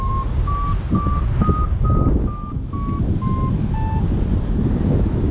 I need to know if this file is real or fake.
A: real